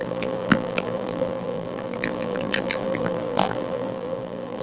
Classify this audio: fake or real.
fake